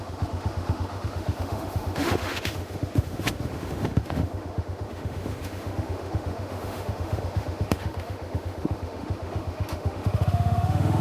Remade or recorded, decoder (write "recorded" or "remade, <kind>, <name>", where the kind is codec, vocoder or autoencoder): remade, autoencoder, DAC-VAE